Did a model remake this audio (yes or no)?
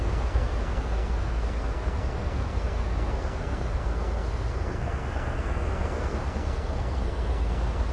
yes